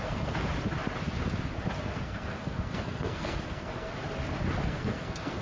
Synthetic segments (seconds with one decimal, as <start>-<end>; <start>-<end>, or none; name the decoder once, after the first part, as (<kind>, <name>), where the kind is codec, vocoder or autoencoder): 0.0-0.5 (codec, SNAC); 1.8-3.9; 4.6-5.4